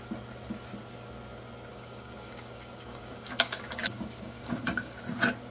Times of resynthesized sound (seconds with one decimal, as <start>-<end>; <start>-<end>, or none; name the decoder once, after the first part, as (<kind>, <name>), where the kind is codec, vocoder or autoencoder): 1.7-5.0 (codec, DAC)